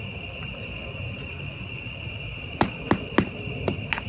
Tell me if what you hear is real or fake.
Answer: real